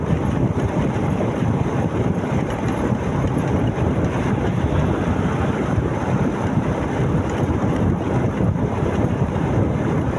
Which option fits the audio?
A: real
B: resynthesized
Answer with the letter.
B